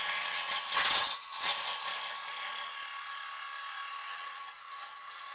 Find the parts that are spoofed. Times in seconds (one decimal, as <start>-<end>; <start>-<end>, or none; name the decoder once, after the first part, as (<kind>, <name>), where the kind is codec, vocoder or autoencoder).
0.0-1.5 (vocoder, WaveNeXt); 4.1-5.3